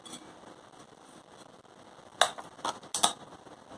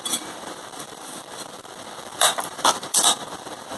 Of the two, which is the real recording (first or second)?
first